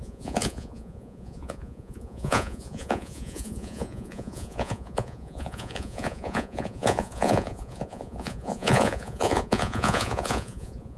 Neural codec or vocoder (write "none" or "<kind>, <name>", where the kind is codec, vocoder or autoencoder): vocoder, Vocos